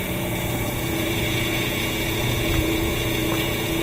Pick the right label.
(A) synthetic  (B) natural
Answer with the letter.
A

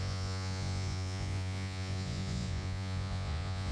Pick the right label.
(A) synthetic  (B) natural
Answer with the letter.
A